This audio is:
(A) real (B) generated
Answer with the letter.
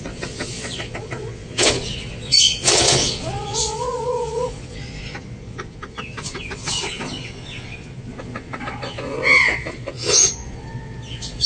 B